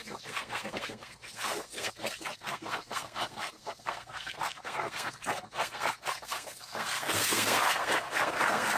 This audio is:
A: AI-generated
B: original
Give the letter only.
A